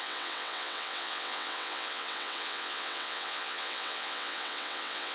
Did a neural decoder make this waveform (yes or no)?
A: yes